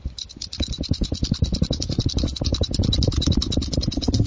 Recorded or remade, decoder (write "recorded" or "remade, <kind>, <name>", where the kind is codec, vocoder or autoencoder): recorded